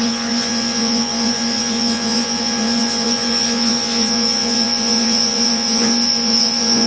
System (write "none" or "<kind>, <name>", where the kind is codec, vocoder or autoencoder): vocoder, Vocos